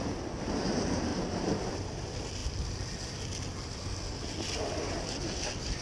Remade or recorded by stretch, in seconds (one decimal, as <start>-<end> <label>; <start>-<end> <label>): 0.0-5.8 recorded